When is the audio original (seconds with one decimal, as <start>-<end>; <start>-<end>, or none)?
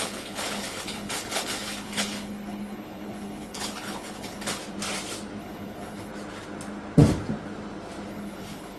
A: 4.6-5.4; 6.1-8.1